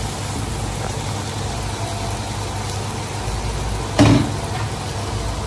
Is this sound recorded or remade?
recorded